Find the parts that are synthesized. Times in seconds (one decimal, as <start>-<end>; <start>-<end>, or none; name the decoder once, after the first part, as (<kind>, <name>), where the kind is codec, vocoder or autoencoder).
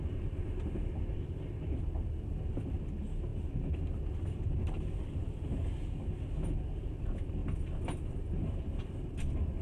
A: none